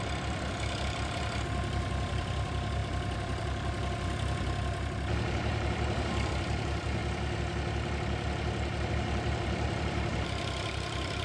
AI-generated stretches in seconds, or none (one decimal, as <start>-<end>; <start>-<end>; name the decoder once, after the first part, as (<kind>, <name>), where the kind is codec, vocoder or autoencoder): 0.0-7.0 (vocoder, BigVGAN v2); 8.9-11.2